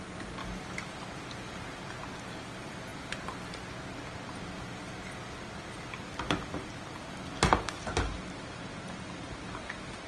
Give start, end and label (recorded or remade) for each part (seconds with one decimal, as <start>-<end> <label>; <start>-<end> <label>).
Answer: 0.0-10.1 recorded